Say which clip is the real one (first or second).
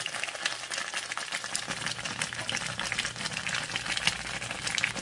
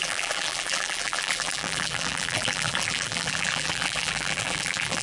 first